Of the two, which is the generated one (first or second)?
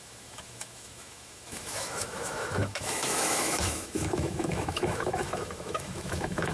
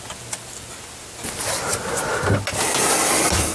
first